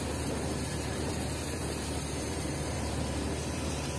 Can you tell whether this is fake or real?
fake